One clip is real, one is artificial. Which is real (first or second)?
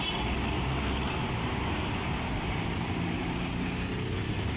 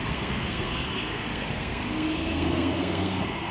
first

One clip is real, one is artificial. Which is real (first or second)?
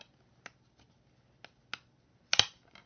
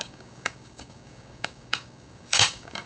first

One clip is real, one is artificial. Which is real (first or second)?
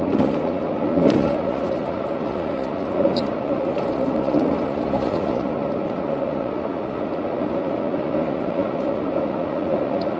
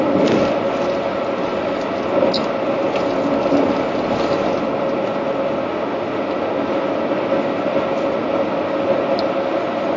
second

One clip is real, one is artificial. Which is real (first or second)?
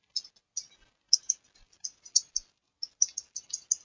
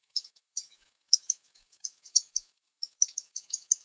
first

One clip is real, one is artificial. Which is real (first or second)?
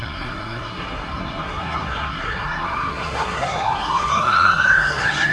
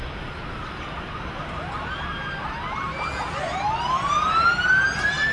second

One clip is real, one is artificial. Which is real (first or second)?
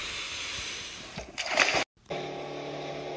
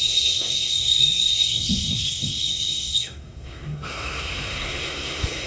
first